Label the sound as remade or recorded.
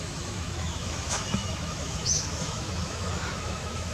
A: remade